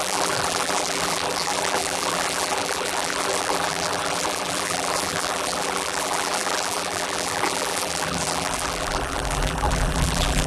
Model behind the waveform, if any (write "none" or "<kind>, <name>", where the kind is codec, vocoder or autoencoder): vocoder, BigVGAN v2